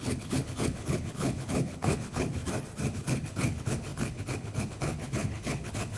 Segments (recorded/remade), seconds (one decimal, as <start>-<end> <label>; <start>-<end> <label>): 0.0-2.4 remade; 2.4-2.9 recorded; 2.9-6.0 remade